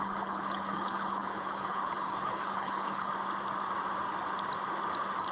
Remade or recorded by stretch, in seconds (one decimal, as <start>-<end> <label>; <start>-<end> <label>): 0.0-3.1 remade; 3.1-5.3 recorded